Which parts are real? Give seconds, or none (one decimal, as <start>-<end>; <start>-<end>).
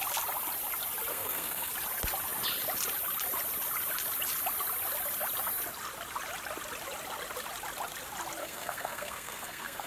0.0-1.1; 1.7-8.4